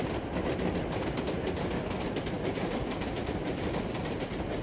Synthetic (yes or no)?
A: no